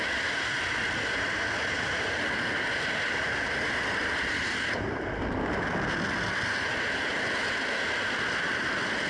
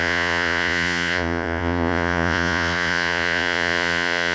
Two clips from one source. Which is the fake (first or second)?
second